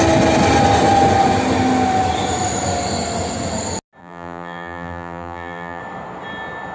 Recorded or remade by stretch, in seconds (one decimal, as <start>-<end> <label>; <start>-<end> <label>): 0.0-4.0 recorded; 4.0-5.8 remade; 5.8-6.7 recorded